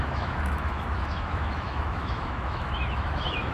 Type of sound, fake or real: fake